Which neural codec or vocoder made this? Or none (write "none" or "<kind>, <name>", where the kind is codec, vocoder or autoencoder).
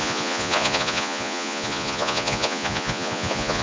vocoder, Vocos